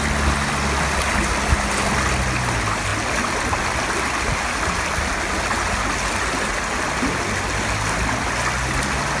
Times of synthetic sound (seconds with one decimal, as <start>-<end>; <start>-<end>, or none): none